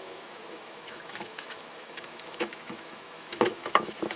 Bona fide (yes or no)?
no